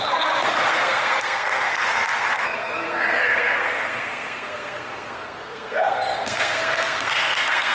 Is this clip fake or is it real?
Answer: fake